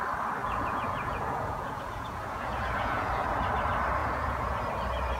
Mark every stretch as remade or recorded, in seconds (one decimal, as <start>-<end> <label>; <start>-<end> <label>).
0.0-0.4 recorded; 0.4-3.1 remade; 3.1-4.0 recorded; 4.0-4.6 remade; 4.6-5.2 recorded